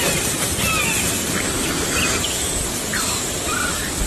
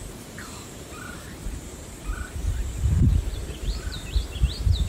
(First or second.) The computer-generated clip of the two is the second